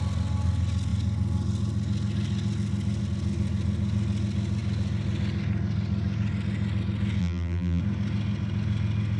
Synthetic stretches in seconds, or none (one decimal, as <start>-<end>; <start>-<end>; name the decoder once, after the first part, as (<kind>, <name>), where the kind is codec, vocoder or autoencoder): 7.2-7.8 (vocoder, BigVGAN v2)